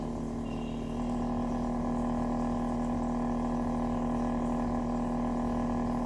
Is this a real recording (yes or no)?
yes